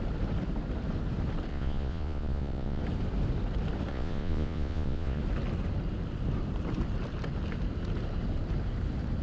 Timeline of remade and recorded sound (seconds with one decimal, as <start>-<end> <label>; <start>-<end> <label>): 0.0-1.5 recorded; 1.5-2.8 remade; 2.8-3.9 recorded; 3.9-5.2 remade; 5.2-9.2 recorded